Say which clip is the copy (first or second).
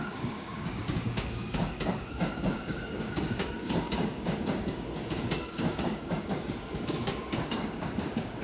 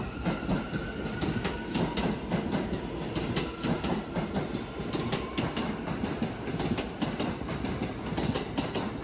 first